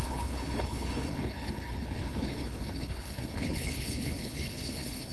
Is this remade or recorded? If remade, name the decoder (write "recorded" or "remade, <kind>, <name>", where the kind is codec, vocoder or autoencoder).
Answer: remade, codec, HILCodec